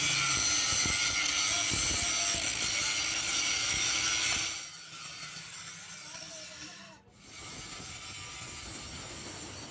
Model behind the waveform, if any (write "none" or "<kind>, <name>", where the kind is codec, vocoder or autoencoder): none